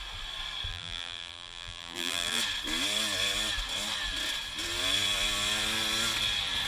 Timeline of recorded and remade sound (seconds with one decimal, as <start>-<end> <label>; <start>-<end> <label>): 0.0-0.7 recorded; 0.7-2.4 remade; 2.4-6.7 recorded